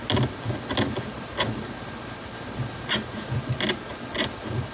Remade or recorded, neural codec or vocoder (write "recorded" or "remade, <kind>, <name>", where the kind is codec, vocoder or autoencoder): recorded